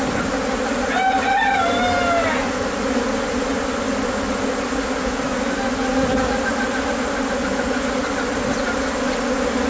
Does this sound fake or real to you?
real